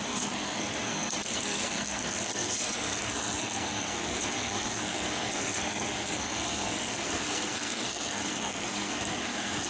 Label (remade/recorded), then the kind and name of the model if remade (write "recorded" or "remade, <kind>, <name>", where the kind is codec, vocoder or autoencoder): remade, codec, SNAC